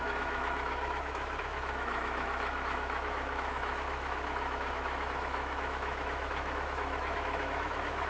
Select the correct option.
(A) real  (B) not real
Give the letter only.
B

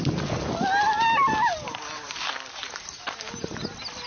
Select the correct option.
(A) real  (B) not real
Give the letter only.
A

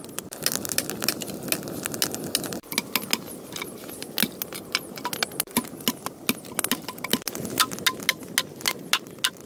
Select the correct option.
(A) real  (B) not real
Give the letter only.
A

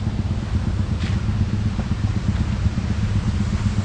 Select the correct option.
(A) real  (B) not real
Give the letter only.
A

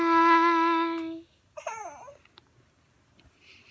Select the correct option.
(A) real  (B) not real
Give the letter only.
A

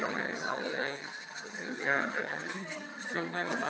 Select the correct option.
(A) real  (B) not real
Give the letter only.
B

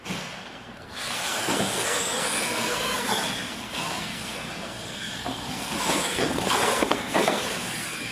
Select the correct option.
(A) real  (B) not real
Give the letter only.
B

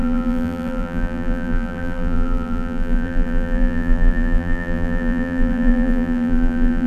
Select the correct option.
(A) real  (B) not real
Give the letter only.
B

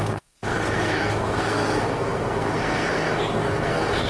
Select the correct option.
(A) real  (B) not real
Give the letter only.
B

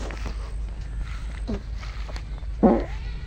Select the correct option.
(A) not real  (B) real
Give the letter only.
B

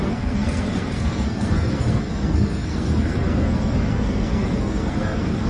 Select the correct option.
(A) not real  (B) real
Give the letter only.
A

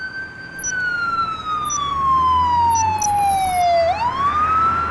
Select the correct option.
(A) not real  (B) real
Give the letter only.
B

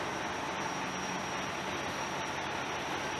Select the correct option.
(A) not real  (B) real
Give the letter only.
B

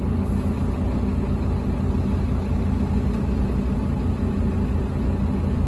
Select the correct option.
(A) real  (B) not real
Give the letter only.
A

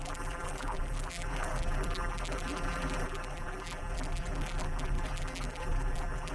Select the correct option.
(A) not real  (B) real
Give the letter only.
A